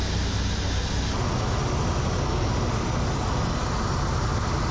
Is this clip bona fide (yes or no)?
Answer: yes